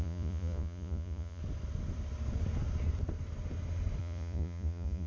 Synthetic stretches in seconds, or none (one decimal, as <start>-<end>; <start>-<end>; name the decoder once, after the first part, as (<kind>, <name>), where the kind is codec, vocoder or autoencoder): 0.0-1.4 (vocoder, Vocos); 4.0-5.1